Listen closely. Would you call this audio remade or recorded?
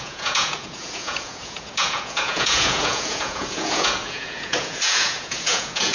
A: remade